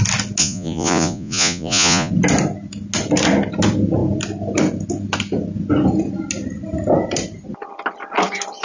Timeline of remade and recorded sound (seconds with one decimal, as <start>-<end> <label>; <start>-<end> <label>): 0.0-0.4 recorded; 0.4-2.1 remade; 2.1-8.6 recorded